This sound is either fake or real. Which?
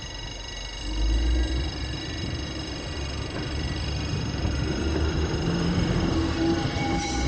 fake